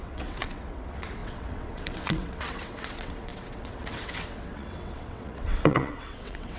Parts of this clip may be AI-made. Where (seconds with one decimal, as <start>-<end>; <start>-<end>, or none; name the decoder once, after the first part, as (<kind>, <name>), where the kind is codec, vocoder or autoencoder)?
0.0-6.6 (vocoder, WaveNeXt)